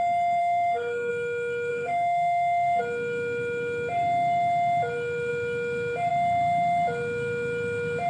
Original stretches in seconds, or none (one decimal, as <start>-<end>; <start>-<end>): 0.0-0.4; 1.1-1.7; 2.8-8.1